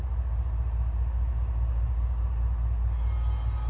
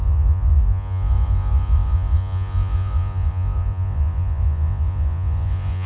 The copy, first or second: second